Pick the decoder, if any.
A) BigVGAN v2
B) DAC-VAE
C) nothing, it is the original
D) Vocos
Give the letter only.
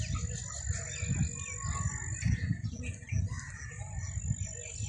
C